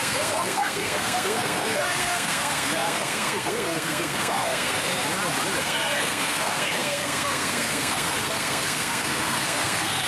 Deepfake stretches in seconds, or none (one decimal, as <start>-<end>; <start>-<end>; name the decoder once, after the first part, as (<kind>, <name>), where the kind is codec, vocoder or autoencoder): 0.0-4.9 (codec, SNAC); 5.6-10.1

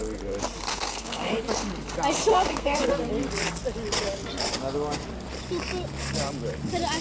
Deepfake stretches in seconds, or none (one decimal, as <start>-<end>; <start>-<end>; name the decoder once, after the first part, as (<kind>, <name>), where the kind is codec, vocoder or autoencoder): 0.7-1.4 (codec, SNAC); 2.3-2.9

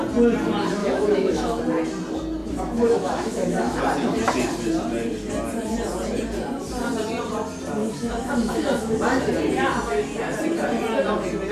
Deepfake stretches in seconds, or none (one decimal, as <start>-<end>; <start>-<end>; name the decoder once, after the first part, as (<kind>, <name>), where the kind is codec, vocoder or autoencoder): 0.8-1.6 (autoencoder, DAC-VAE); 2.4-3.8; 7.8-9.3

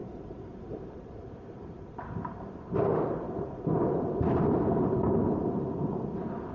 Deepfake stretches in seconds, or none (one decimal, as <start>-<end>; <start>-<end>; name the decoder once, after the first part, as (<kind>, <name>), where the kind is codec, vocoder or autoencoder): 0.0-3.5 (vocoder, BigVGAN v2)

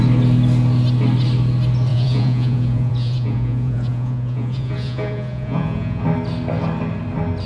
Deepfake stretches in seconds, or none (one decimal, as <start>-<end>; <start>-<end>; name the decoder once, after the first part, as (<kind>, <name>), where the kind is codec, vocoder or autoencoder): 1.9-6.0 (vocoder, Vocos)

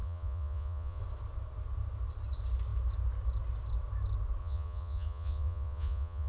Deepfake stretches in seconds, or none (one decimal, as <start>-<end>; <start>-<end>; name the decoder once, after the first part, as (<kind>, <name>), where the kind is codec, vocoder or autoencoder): 0.0-1.0 (vocoder, Vocos); 4.4-6.3